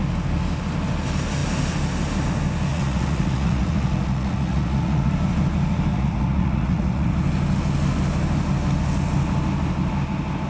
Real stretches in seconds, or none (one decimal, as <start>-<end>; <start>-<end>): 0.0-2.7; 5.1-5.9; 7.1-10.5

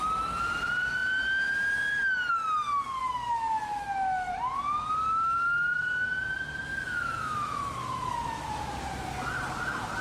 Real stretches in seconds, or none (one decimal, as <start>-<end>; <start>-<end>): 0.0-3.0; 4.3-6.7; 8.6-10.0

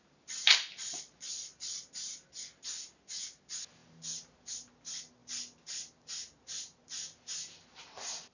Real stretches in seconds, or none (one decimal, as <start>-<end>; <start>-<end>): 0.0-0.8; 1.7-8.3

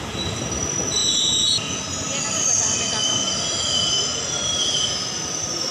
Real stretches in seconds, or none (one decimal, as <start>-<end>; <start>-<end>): 0.0-1.0; 1.8-5.7

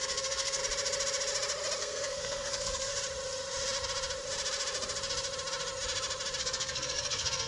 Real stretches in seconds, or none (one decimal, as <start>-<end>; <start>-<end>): 0.6-1.8; 2.9-6.4

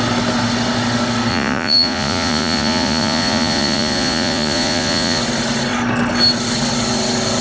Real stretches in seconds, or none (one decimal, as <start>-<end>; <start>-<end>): 0.0-1.3; 5.2-7.4